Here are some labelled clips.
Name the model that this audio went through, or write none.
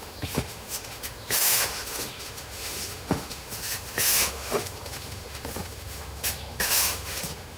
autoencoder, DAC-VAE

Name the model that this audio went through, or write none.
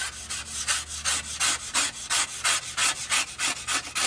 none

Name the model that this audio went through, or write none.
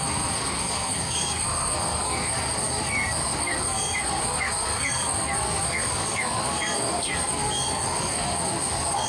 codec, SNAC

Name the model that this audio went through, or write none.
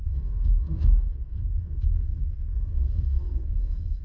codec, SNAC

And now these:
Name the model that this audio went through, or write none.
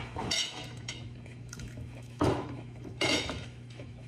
autoencoder, DAC-VAE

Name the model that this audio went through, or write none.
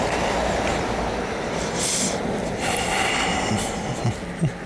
none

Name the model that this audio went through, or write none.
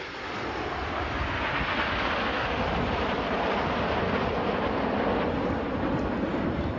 none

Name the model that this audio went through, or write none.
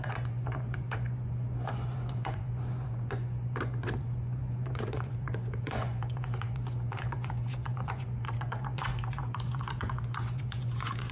vocoder, Vocos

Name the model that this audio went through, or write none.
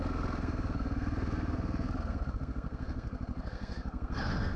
codec, SNAC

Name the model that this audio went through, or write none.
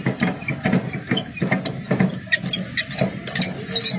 none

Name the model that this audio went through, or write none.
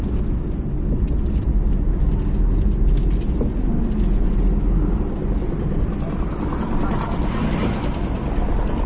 none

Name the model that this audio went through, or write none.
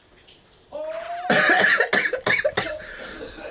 none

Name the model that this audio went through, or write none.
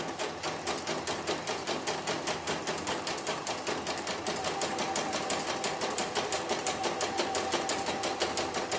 none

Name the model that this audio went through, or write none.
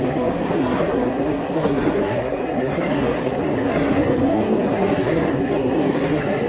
codec, SNAC